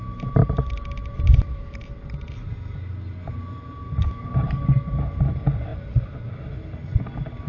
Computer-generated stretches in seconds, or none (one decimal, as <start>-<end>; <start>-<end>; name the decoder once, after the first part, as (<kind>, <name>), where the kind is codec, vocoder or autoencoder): 1.0-2.4 (vocoder, BigVGAN v2); 4.0-4.5; 5.7-6.4